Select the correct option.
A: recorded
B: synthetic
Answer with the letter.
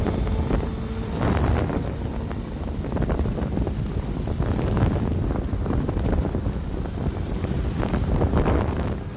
B